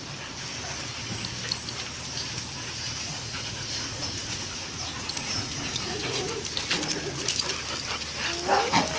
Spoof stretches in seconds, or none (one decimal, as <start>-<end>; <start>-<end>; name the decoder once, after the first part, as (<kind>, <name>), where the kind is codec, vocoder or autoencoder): 3.1-6.4 (vocoder, Vocos)